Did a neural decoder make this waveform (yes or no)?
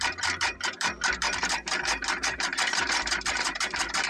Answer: yes